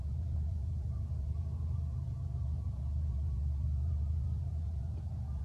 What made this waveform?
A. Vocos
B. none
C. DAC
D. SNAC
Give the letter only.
A